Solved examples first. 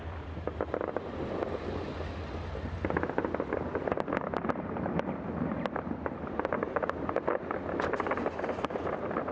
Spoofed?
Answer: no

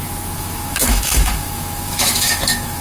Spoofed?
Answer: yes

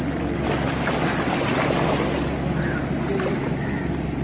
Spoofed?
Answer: no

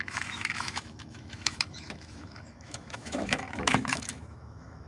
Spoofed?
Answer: yes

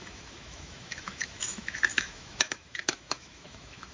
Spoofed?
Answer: yes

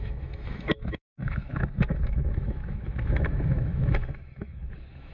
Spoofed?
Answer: yes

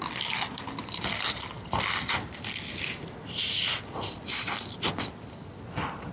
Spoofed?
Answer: no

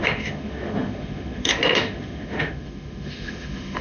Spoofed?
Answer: yes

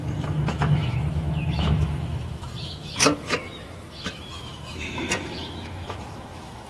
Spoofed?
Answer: yes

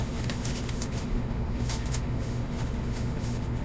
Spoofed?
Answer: yes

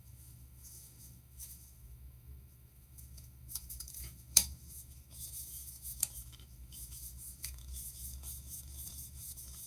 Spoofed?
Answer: yes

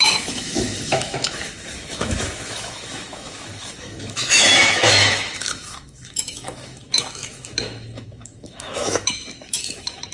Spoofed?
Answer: yes